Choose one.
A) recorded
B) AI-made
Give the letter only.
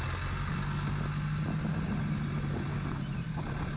A